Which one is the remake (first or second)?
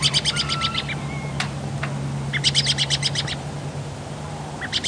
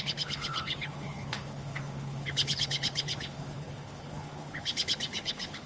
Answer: second